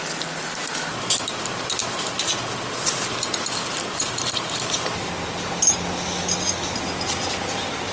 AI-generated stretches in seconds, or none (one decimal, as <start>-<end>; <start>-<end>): none